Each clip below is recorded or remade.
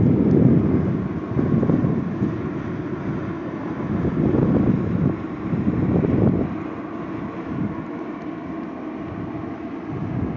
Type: recorded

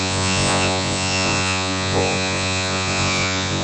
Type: remade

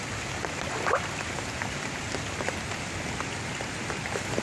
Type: recorded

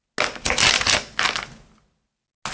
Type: recorded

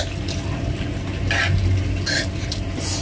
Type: recorded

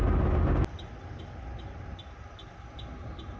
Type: recorded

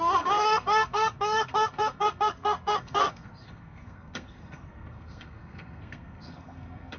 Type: remade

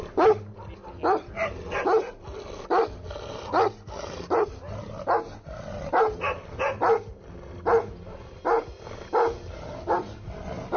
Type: recorded